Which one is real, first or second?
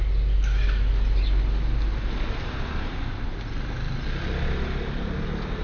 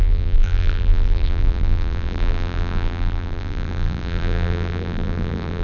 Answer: first